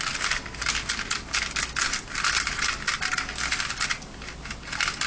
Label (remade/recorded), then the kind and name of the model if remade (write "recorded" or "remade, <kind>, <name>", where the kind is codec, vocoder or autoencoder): recorded